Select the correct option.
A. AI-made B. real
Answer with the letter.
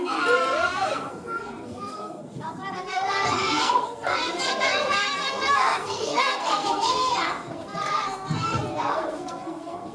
A